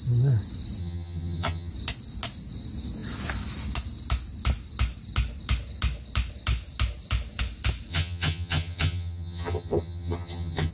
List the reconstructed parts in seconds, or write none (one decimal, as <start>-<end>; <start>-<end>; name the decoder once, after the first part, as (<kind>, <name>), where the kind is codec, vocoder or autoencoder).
0.8-1.7 (vocoder, HiFi-GAN); 7.9-10.7